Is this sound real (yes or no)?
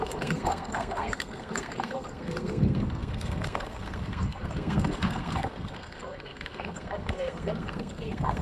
no